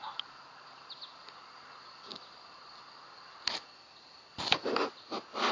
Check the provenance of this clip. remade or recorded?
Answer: recorded